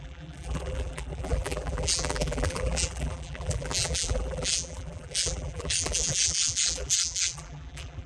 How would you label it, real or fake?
fake